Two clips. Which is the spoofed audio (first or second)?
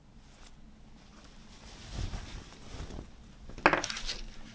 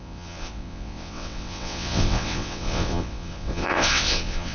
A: second